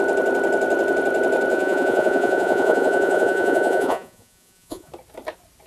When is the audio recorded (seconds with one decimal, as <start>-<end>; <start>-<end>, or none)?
0.0-1.5; 4.9-5.7